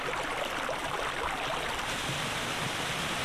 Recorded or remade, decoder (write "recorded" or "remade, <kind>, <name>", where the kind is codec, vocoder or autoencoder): recorded